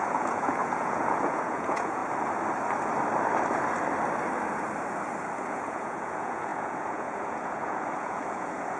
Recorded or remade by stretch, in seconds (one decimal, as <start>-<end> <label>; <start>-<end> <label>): 0.0-2.0 remade; 2.0-5.4 recorded; 5.4-8.8 remade